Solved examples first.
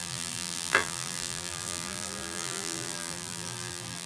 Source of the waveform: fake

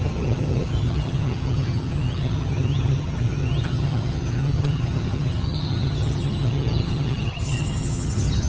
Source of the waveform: fake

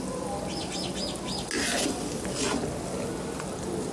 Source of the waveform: real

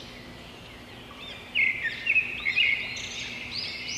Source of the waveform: real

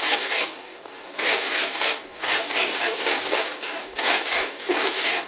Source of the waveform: fake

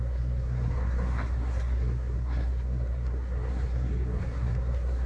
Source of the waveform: fake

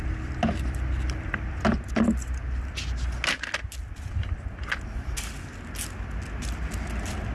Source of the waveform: real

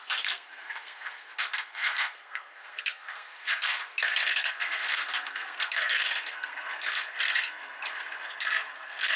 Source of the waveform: fake